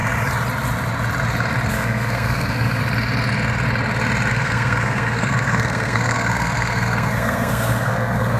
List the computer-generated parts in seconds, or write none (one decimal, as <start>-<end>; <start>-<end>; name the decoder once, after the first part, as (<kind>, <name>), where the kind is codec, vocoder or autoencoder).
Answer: 1.7-2.8 (codec, SNAC); 4.3-8.4